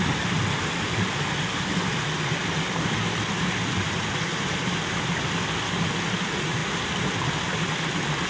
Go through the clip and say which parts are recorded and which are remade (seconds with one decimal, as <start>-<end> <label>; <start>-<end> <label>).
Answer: 0.0-8.3 recorded